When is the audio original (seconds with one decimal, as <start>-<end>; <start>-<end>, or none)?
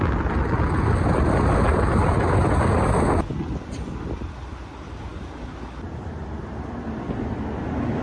0.0-8.0